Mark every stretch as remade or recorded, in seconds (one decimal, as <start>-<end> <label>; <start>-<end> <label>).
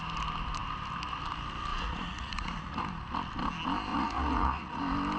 0.0-1.7 recorded; 1.7-2.8 remade; 2.8-3.9 recorded; 3.9-4.8 remade; 4.8-5.2 recorded